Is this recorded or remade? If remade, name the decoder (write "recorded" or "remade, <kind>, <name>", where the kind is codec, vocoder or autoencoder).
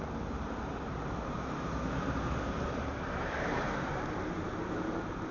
remade, vocoder, BigVGAN v2